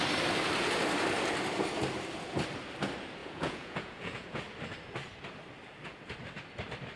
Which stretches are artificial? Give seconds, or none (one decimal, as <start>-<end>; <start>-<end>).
3.2-4.4